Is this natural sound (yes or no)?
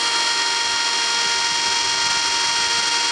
yes